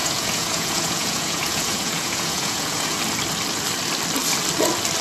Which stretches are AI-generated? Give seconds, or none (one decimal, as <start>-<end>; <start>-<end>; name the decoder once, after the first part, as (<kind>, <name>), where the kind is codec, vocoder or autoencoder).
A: 0.0-3.0 (vocoder, Vocos)